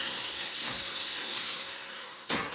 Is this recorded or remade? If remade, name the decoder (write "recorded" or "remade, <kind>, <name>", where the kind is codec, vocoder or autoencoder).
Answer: remade, codec, SNAC